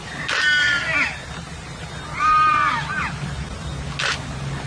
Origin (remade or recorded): recorded